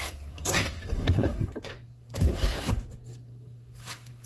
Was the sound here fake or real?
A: fake